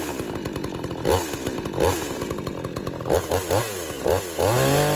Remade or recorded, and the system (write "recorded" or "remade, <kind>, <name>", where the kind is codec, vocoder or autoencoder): recorded